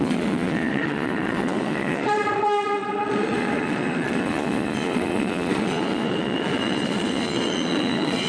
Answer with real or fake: fake